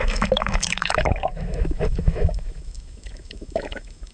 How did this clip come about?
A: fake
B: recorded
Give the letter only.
A